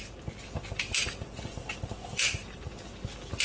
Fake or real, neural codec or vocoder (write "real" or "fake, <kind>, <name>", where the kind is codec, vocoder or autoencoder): real